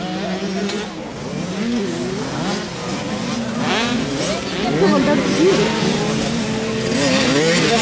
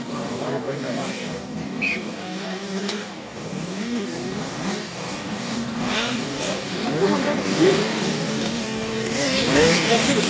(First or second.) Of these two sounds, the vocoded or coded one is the second